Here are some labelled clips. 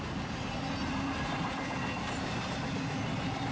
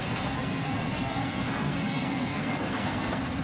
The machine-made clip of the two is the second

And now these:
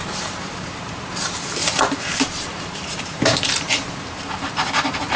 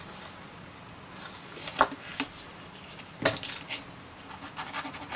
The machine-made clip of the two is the first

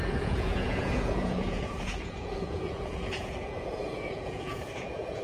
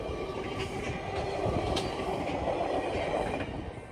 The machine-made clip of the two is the first